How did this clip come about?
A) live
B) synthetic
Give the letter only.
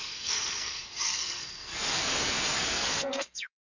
B